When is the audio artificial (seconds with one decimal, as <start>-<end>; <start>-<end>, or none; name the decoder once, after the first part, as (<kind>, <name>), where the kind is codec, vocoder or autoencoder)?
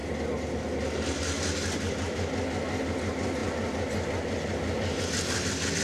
none